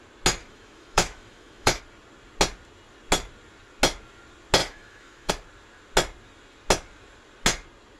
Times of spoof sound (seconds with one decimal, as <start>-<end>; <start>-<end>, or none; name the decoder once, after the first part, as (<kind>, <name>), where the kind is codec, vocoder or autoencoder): 0.4-1.8 (autoencoder, DAC-VAE); 4.6-5.3